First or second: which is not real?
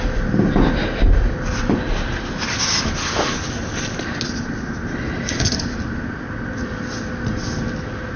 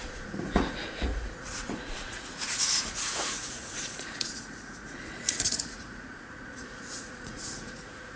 second